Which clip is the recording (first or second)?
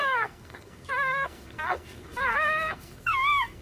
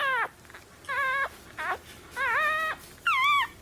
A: second